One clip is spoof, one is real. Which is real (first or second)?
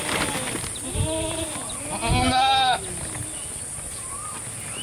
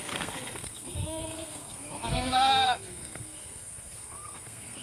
first